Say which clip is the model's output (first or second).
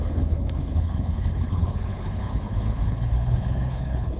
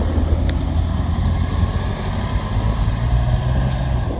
first